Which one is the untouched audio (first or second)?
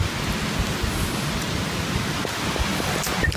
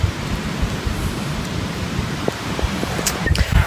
first